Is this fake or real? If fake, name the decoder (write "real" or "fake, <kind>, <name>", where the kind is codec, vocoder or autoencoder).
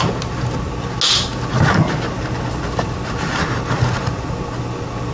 real